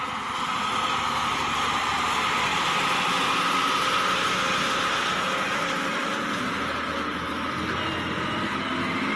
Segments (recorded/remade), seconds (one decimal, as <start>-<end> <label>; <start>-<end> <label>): 0.0-9.2 recorded